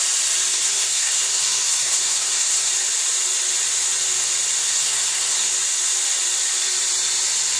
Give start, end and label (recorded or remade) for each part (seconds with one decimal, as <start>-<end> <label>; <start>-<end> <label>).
0.0-0.5 recorded; 0.5-2.7 remade; 2.7-4.6 recorded; 4.6-5.5 remade; 5.5-7.6 recorded